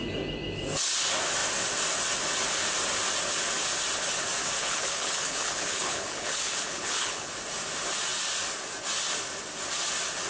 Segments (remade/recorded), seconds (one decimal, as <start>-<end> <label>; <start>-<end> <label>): 0.0-4.6 recorded; 4.6-7.3 remade; 7.3-10.3 recorded